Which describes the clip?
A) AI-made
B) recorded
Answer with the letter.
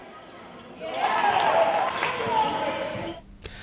B